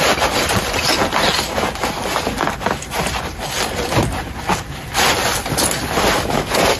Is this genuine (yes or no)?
yes